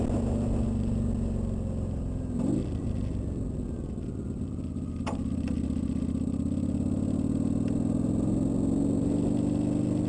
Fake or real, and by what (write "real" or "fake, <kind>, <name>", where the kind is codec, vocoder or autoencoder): real